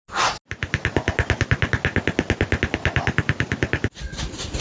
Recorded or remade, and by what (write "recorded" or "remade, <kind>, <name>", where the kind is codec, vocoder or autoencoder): recorded